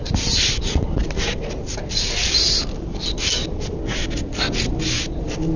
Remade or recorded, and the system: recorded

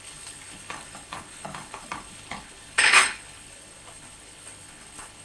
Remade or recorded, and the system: remade, codec, HILCodec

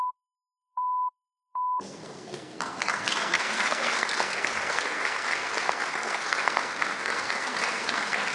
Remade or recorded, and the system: remade, codec, SNAC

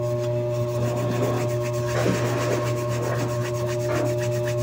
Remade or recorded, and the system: recorded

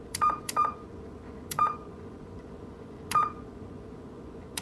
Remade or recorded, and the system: remade, vocoder, Vocos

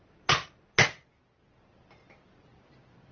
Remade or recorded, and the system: recorded